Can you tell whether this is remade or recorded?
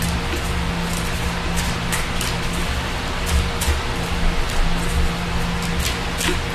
recorded